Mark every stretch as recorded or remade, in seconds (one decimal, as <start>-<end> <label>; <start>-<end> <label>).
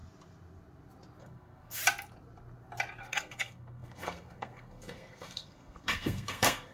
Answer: 0.0-1.2 recorded; 1.2-1.8 remade; 1.8-3.0 recorded; 3.0-6.7 remade